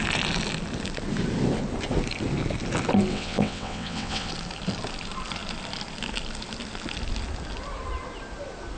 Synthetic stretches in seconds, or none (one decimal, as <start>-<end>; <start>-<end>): 3.1-4.3